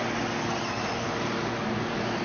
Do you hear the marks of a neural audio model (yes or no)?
no